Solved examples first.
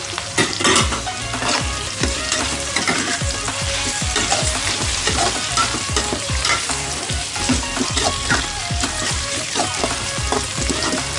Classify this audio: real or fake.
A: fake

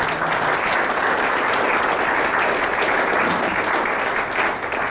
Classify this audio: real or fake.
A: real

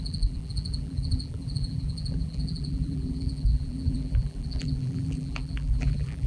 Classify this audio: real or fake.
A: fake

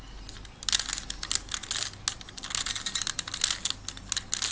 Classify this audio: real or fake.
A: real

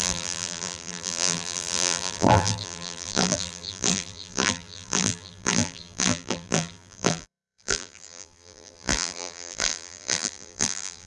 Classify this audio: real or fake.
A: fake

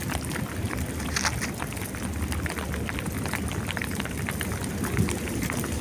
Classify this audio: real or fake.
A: real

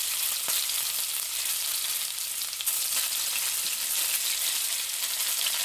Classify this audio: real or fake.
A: real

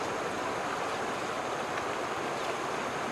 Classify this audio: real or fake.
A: real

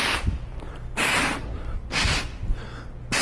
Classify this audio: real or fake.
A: real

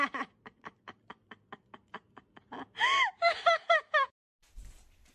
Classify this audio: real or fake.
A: real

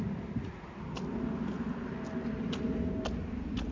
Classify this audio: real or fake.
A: real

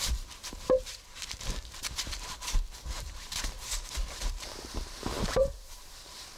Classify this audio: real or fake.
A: fake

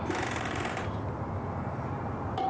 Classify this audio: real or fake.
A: fake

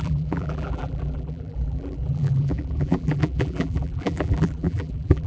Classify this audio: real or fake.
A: fake